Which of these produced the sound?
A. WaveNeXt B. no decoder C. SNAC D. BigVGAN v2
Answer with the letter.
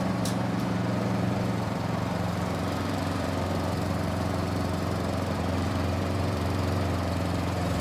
D